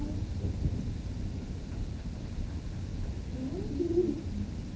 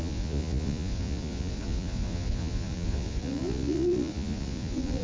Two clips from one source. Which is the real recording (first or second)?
first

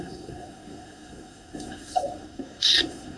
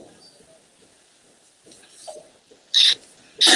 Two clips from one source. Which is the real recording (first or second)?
second